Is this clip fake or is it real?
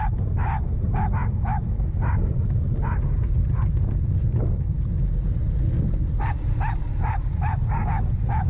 real